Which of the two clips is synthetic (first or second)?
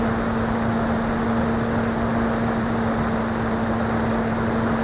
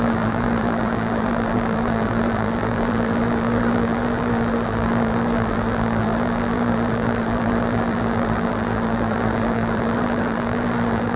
second